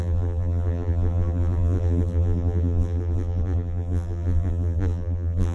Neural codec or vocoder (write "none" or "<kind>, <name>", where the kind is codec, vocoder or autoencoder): vocoder, BigVGAN v2